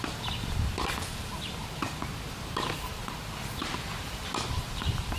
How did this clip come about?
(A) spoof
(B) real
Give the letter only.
A